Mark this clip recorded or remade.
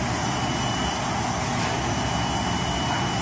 recorded